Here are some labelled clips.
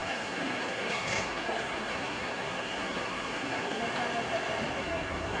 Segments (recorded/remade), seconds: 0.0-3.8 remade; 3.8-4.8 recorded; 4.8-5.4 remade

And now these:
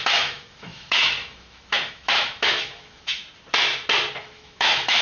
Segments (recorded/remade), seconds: 0.0-3.2 remade; 3.2-4.2 recorded; 4.2-5.0 remade

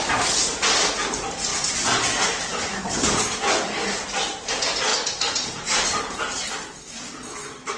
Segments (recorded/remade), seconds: 0.0-1.5 recorded; 1.5-3.2 remade; 3.2-4.9 recorded; 4.9-7.0 remade; 7.0-7.8 recorded

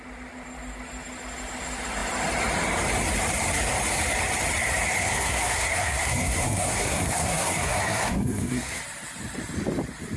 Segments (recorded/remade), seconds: 0.0-5.0 recorded; 5.0-8.8 remade; 8.8-10.2 recorded